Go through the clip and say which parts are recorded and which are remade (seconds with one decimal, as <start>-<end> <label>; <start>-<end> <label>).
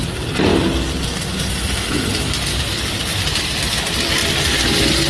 0.0-0.5 remade; 0.5-3.6 recorded; 3.6-4.2 remade; 4.2-5.1 recorded